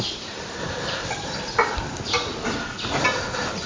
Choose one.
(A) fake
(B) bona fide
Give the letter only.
B